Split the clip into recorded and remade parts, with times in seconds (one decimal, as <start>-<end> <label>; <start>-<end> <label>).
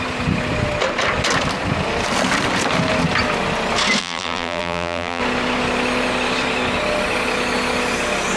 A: 0.0-4.0 recorded; 4.0-5.2 remade; 5.2-8.4 recorded